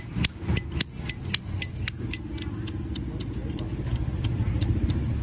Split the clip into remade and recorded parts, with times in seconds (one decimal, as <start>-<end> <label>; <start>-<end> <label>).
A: 0.0-5.2 recorded

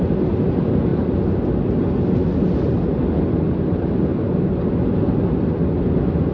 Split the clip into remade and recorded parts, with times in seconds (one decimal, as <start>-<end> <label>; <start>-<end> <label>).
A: 0.0-6.3 recorded

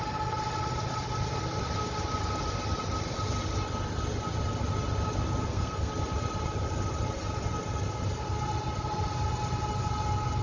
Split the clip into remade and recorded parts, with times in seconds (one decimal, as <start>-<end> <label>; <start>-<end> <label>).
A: 0.0-5.4 recorded; 5.4-5.9 remade; 5.9-10.4 recorded

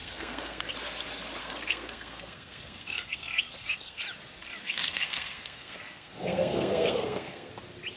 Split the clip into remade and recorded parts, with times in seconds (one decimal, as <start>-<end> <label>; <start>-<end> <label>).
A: 0.0-0.7 remade; 0.7-1.4 recorded; 1.4-4.0 remade; 4.0-4.6 recorded; 4.6-7.5 remade; 7.5-8.0 recorded